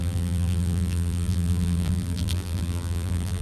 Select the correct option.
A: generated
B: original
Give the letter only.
A